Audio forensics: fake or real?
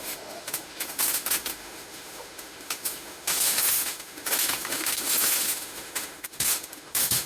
fake